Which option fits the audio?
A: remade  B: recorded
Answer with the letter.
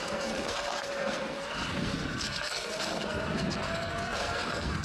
A